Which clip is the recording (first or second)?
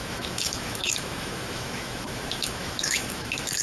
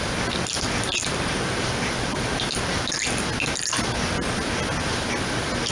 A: second